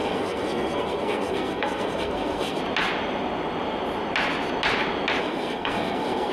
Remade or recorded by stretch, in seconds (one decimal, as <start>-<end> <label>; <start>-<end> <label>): 0.0-2.6 remade; 2.6-5.2 recorded; 5.2-6.3 remade